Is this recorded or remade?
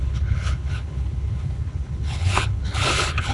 remade